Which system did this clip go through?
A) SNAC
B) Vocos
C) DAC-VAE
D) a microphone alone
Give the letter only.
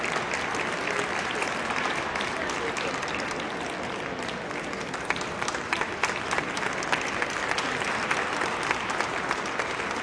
D